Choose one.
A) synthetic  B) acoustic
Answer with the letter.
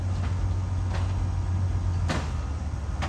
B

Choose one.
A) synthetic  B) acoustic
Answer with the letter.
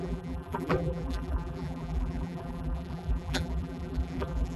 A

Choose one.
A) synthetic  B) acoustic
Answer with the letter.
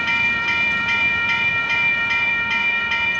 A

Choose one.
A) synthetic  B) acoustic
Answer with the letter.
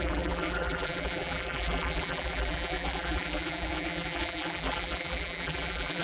A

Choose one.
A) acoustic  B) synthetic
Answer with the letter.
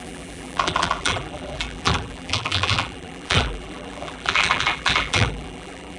B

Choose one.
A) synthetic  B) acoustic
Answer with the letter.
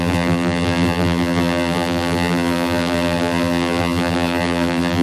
A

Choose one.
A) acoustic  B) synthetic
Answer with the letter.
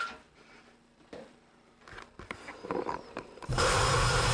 B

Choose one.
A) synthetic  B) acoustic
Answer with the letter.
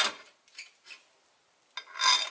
B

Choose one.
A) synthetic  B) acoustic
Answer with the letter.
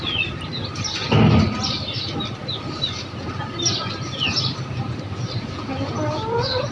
B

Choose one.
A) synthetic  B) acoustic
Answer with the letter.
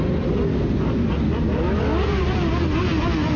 B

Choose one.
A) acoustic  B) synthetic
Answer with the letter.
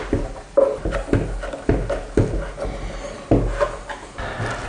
A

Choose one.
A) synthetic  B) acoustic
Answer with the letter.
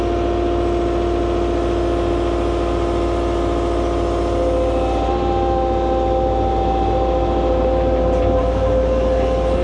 B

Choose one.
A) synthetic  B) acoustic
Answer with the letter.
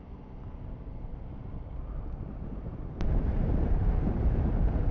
A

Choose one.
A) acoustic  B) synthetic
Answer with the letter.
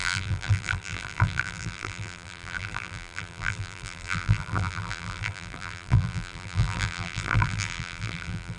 B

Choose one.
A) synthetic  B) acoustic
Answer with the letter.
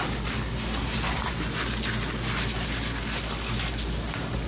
B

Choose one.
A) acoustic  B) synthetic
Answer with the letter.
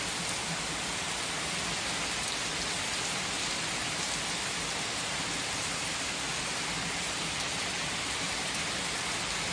A